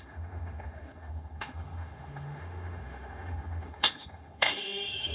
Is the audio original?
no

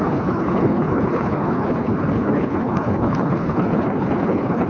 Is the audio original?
no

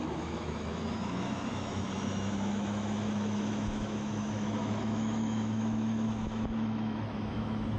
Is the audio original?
no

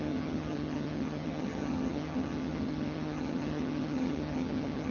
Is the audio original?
no